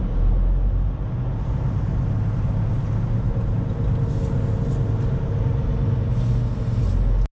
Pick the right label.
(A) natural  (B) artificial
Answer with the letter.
A